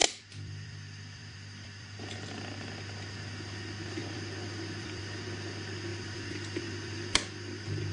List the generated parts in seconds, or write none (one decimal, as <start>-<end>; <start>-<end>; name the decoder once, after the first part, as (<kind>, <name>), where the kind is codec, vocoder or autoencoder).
0.0-2.0 (vocoder, BigVGAN v2); 4.0-5.0; 5.9-7.9